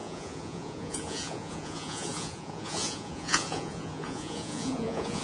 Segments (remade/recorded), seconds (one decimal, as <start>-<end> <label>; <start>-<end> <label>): 0.0-5.2 remade